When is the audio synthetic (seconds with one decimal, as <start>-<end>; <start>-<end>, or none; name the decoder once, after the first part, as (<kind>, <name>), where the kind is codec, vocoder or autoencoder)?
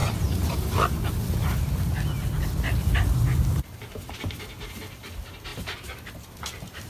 none